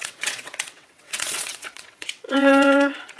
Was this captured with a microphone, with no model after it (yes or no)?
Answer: no